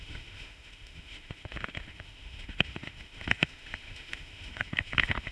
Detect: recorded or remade remade